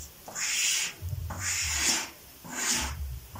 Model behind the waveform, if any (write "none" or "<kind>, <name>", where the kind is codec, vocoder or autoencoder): vocoder, BigVGAN v2